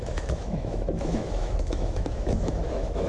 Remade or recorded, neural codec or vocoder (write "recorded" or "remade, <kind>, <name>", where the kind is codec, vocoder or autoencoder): remade, autoencoder, DAC-VAE